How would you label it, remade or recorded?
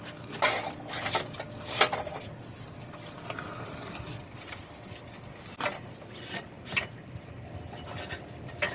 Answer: recorded